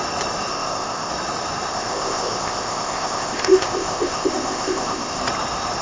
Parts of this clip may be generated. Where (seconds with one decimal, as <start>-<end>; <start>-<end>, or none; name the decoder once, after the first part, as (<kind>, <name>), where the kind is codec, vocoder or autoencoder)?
0.5-1.1 (codec, ZipCodec); 1.7-5.2